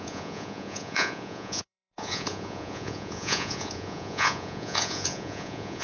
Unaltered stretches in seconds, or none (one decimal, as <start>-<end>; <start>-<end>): none